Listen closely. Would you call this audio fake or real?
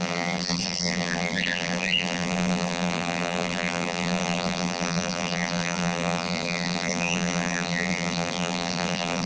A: fake